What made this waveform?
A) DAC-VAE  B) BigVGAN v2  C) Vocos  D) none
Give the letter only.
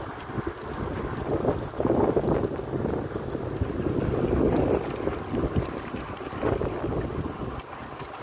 D